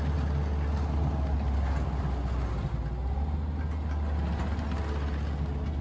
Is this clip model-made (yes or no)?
no